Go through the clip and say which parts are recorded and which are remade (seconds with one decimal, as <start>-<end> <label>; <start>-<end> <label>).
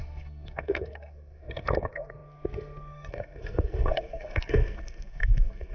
0.0-5.7 remade